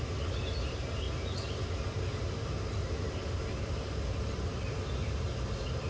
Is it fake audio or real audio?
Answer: real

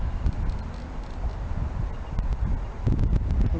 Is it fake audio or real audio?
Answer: real